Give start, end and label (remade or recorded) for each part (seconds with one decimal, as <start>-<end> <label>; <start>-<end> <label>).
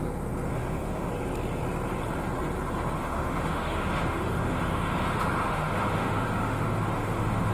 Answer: 0.0-0.5 recorded; 0.5-1.1 remade; 1.1-3.0 recorded; 3.0-7.5 remade